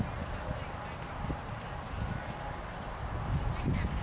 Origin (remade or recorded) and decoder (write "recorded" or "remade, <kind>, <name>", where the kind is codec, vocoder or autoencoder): recorded